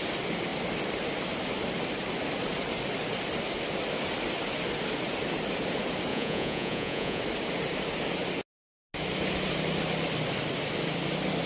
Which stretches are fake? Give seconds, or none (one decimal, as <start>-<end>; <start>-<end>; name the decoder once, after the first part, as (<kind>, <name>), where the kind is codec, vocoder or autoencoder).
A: 6.1-7.2 (vocoder, Vocos)